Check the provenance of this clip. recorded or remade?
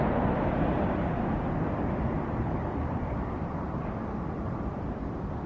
remade